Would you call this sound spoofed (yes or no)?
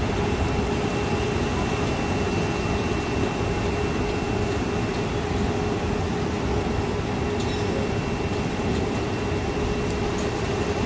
no